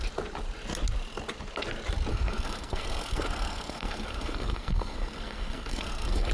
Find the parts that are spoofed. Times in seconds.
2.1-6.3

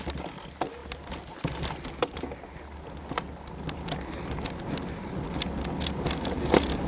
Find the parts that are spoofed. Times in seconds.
none

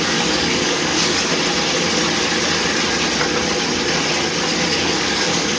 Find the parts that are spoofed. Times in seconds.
0.0-1.3; 4.7-5.6

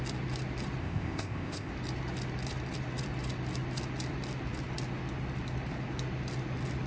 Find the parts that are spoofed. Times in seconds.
0.8-1.7

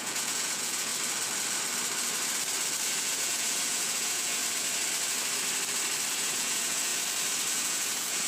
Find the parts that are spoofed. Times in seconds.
0.0-0.9; 2.8-4.4; 6.1-6.9; 7.5-8.3